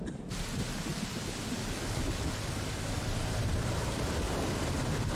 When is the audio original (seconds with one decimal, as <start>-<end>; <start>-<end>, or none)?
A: 0.9-2.7